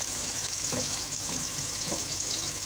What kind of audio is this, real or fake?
fake